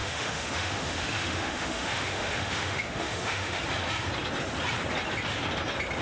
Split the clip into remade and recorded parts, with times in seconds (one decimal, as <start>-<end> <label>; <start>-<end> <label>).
0.0-3.6 remade; 3.6-6.0 recorded